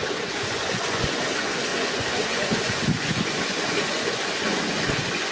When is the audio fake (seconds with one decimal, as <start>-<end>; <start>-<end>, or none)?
0.0-5.3